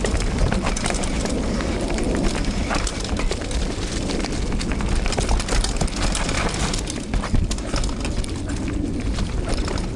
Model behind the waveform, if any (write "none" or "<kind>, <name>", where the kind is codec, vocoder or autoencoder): none